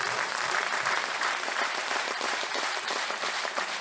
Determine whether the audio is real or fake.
fake